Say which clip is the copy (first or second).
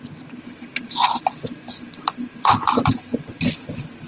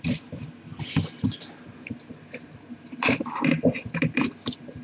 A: first